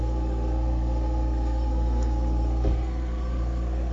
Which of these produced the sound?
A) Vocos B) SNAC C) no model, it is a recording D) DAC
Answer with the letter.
B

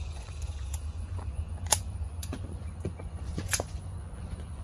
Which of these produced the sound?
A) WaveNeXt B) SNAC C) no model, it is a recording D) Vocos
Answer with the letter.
D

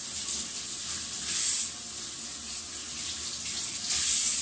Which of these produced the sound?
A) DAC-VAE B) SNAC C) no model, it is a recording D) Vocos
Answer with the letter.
C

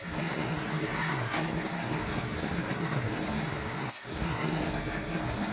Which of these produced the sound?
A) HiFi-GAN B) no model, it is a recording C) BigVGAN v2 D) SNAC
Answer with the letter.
D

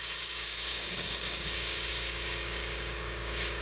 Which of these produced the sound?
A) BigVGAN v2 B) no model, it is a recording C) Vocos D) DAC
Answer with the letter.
D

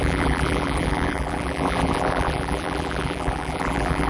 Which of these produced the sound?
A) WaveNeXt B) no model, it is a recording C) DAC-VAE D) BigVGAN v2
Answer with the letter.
D